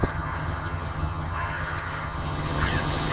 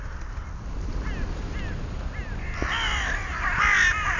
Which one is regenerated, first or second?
first